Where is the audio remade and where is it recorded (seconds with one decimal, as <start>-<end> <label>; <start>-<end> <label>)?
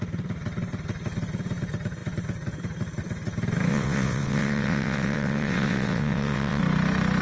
0.0-3.7 recorded; 3.7-6.6 remade; 6.6-7.2 recorded